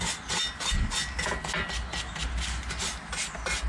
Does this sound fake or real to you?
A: real